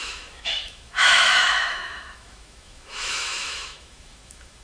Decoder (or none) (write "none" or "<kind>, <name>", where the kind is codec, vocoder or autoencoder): autoencoder, DAC-VAE